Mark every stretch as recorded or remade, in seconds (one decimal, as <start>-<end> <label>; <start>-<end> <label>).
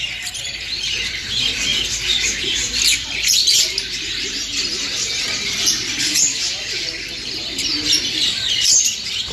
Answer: 0.0-9.3 remade